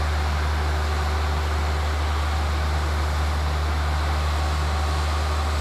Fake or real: real